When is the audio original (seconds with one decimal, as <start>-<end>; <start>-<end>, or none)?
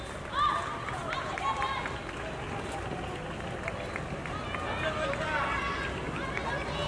0.0-6.9